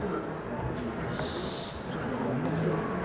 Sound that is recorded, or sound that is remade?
recorded